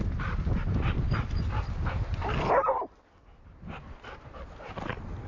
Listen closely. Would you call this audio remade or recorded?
recorded